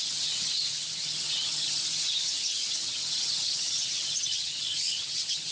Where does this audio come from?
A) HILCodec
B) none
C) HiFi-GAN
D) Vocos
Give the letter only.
C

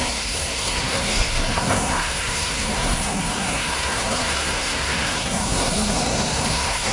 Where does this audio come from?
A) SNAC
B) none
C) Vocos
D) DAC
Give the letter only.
A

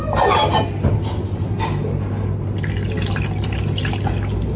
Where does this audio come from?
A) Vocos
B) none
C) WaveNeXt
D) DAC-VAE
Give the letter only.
B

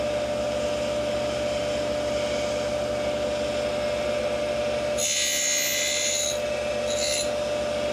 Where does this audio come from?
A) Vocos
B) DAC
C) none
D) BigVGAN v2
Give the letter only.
C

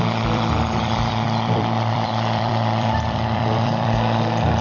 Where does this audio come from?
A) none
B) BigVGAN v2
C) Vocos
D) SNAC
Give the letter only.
B